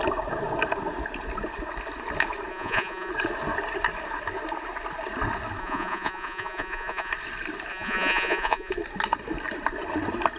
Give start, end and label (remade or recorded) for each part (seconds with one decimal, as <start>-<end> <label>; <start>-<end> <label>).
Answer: 0.0-2.5 recorded; 2.5-3.1 remade; 3.1-5.6 recorded; 5.6-7.1 remade; 7.1-7.7 recorded; 7.7-8.7 remade; 8.7-10.4 recorded